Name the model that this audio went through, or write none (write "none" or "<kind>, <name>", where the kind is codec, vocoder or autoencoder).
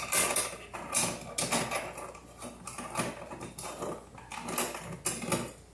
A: none